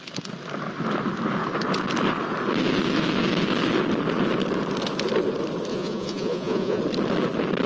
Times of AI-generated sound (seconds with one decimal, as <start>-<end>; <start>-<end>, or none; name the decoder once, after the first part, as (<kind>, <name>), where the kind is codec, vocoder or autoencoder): 5.7-6.8 (vocoder, Vocos)